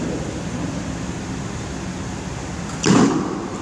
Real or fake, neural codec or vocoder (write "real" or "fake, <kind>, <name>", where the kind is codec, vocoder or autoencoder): real